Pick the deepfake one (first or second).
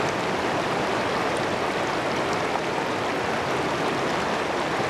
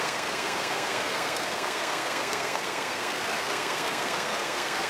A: second